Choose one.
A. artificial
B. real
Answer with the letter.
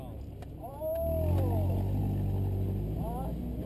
B